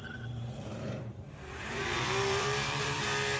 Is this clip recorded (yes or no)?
no